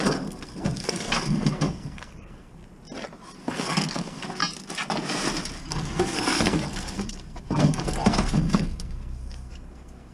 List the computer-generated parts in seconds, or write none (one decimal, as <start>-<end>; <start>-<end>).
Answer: 0.0-2.6; 3.4-4.4; 5.6-10.1